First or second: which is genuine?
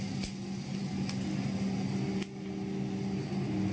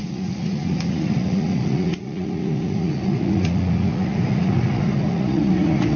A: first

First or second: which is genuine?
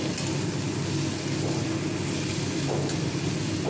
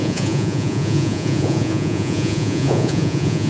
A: first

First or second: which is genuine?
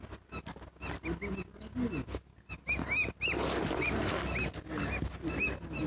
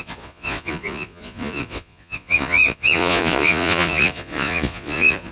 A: first